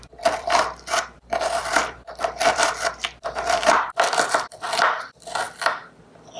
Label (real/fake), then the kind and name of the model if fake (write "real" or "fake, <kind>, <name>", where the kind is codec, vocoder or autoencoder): fake, vocoder, BigVGAN v2